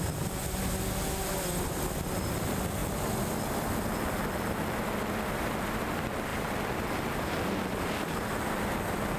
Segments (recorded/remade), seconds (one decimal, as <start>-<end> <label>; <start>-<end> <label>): 0.0-9.2 recorded